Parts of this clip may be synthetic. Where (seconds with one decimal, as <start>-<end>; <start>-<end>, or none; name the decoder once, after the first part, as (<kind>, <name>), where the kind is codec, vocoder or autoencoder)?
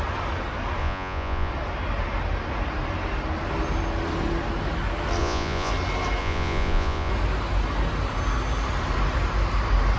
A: 0.8-1.5 (vocoder, Vocos); 5.2-5.7; 6.2-7.1